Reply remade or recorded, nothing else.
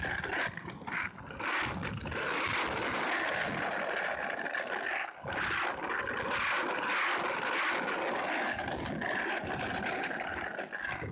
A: recorded